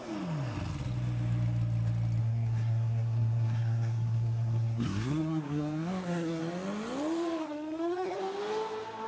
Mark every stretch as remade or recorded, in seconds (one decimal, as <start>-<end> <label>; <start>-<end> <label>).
0.0-2.2 recorded; 2.2-6.4 remade; 6.4-7.4 recorded; 7.4-8.2 remade; 8.2-9.1 recorded